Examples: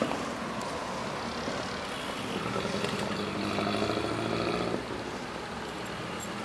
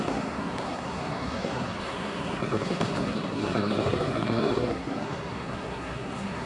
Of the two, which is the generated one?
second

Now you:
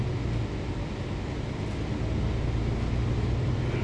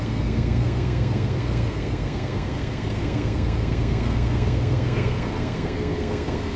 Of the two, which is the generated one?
second